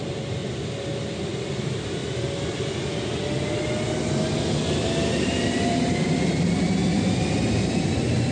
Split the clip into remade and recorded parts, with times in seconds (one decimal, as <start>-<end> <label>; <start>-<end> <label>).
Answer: 0.0-0.4 remade; 0.4-1.6 recorded; 1.6-2.0 remade; 2.0-5.7 recorded; 5.7-6.8 remade; 6.8-7.6 recorded; 7.6-8.3 remade